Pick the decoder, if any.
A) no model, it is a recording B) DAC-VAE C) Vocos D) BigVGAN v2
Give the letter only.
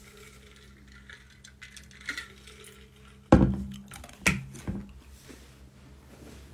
A